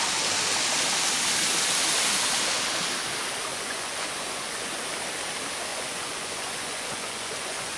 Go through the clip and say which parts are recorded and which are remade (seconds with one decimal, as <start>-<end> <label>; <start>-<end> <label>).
0.0-3.5 recorded; 3.5-4.8 remade; 4.8-5.7 recorded; 5.7-7.8 remade